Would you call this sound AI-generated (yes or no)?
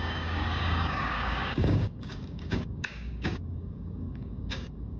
yes